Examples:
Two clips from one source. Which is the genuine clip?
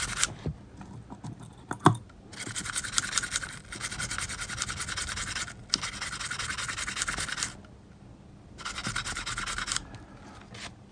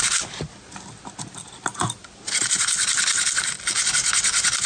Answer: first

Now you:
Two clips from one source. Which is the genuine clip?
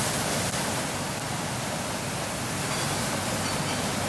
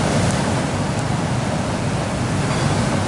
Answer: first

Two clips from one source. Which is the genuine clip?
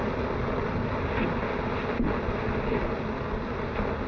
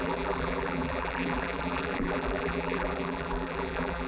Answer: first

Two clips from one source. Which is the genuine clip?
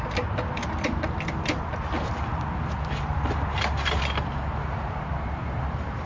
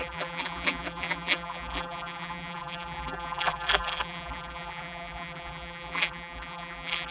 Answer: first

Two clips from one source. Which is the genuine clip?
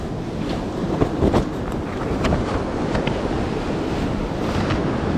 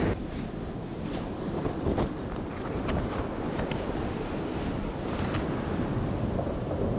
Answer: first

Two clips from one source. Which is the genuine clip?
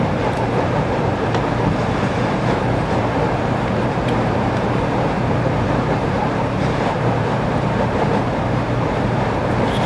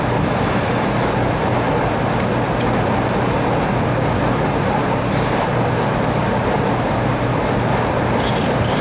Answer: second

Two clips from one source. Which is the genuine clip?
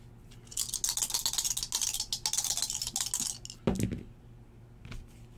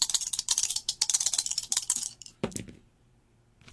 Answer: first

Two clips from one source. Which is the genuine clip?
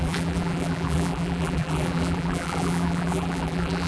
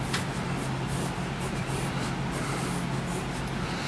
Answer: second